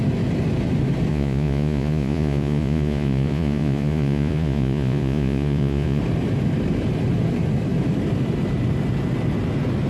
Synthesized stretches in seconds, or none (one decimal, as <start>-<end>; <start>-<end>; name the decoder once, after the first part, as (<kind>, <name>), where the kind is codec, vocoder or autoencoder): 1.1-6.0 (vocoder, Vocos)